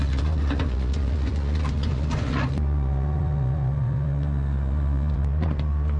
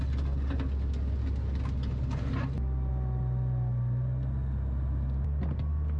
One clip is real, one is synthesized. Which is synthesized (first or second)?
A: first